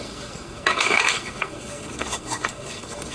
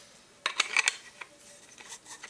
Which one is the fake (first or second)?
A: first